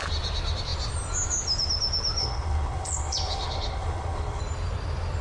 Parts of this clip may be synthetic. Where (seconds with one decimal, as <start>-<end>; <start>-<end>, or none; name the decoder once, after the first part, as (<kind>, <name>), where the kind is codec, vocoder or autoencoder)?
2.2-4.4 (codec, HILCodec)

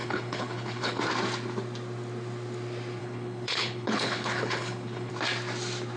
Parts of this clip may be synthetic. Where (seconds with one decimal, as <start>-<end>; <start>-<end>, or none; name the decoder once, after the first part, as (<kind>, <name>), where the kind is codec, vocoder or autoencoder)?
0.0-1.0 (codec, HILCodec); 3.0-5.1

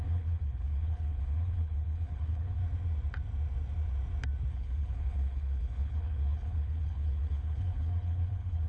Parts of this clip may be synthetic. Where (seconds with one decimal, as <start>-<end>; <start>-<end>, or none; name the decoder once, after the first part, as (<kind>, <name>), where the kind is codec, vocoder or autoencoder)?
0.0-2.6 (codec, HILCodec); 4.5-8.7

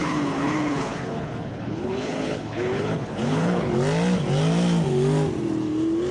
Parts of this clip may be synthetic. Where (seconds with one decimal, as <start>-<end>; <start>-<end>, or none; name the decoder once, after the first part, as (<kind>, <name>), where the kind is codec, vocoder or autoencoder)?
0.0-3.7 (codec, HILCodec)

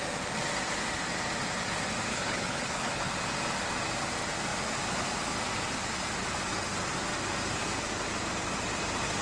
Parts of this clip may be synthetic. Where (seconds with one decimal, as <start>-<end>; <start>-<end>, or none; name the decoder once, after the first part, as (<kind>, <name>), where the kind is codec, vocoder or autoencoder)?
2.1-3.1 (codec, HILCodec)

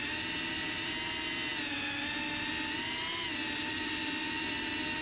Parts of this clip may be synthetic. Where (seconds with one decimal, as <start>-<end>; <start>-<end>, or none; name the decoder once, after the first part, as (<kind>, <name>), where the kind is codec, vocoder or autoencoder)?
none

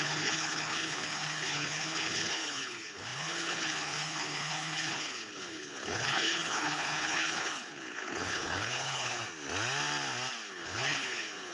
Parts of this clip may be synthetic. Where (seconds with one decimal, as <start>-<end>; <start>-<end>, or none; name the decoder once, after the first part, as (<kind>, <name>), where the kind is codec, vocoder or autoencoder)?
0.0-9.2 (codec, HILCodec); 10.5-11.5